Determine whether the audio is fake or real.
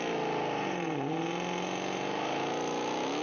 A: real